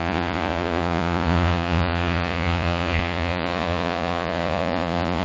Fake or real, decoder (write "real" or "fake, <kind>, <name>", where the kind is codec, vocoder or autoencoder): fake, vocoder, Vocos